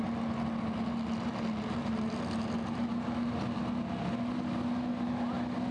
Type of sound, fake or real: real